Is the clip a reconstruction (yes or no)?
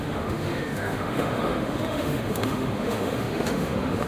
yes